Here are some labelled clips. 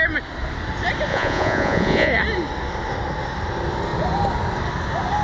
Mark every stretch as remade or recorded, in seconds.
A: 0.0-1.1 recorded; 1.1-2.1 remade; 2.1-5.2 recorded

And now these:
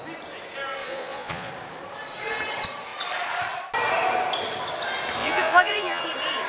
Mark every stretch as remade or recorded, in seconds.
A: 0.0-0.8 recorded; 0.8-1.5 remade; 1.5-5.2 recorded; 5.2-6.0 remade; 6.0-6.5 recorded